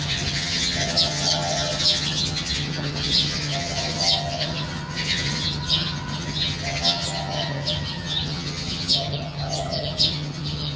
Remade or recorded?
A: remade